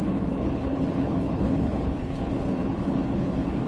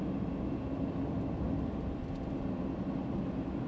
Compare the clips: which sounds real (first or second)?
second